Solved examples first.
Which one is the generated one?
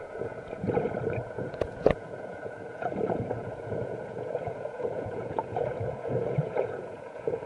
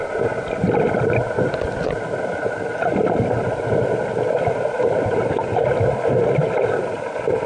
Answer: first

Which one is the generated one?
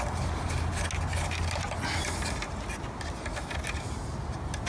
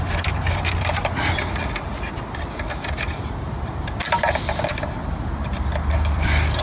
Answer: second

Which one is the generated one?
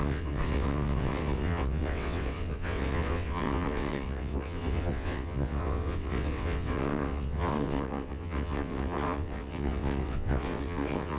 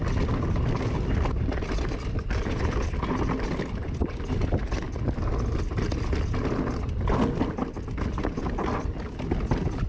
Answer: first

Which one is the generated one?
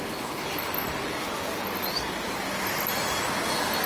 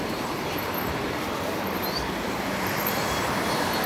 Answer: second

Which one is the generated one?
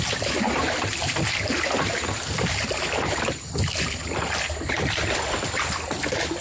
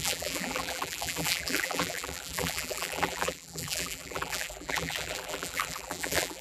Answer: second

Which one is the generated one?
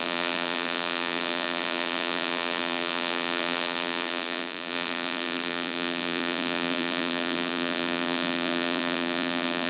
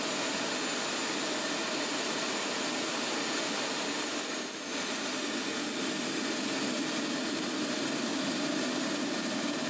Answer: first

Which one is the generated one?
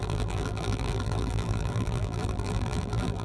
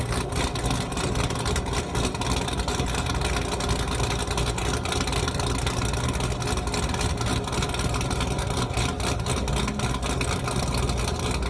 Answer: first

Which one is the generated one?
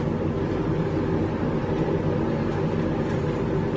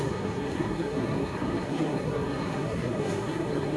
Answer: second